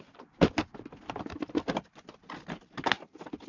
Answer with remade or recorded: recorded